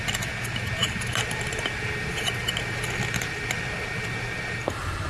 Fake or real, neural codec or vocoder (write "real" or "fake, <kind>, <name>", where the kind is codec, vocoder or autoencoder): real